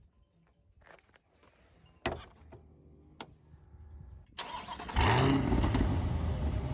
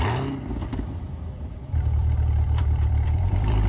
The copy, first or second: second